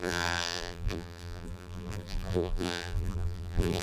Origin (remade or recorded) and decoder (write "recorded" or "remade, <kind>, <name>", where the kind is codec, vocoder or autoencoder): remade, vocoder, BigVGAN v2